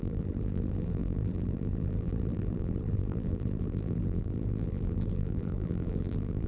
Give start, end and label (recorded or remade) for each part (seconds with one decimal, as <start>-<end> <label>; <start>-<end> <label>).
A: 0.0-6.5 remade

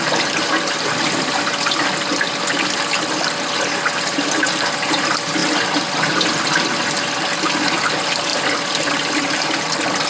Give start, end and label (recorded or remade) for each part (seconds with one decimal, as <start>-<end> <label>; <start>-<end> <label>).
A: 0.0-5.4 remade; 5.4-7.5 recorded; 7.5-10.1 remade

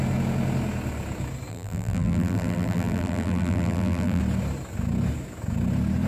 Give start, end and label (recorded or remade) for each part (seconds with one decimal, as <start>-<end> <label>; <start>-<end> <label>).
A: 0.0-1.5 recorded; 1.5-4.2 remade; 4.2-6.1 recorded

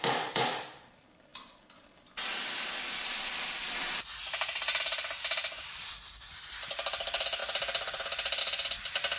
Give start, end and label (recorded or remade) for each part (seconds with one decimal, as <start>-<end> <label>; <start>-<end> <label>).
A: 0.0-9.2 remade

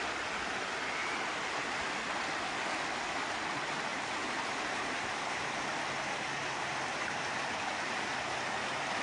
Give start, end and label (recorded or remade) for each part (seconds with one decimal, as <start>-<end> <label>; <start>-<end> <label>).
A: 0.0-1.0 recorded; 1.0-1.9 remade; 1.9-3.9 recorded; 3.9-8.1 remade; 8.1-9.0 recorded

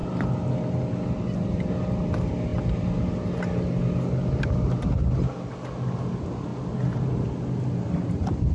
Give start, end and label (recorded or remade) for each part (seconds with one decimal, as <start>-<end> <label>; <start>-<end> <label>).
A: 0.0-0.5 remade; 0.5-8.5 recorded

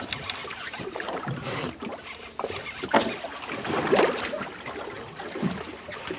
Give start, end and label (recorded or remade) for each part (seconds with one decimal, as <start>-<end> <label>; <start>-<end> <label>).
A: 0.0-0.4 recorded; 0.4-1.4 remade; 1.4-6.2 recorded